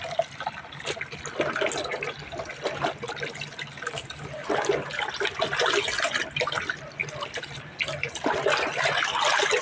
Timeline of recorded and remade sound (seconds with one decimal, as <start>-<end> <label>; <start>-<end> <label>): 0.0-9.6 recorded